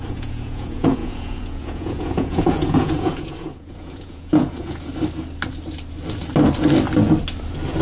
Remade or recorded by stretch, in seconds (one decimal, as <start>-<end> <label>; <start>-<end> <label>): 0.0-4.9 remade; 4.9-7.8 recorded